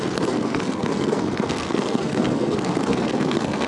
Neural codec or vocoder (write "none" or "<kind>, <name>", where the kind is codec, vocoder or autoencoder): codec, SNAC